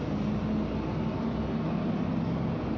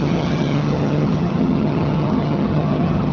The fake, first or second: second